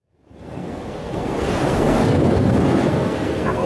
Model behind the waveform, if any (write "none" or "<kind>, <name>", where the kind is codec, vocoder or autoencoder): codec, SNAC